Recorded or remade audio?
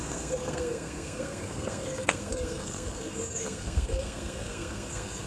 remade